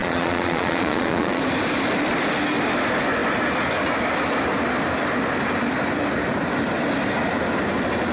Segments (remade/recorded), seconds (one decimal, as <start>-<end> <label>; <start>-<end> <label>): 0.0-1.4 remade; 1.4-8.1 recorded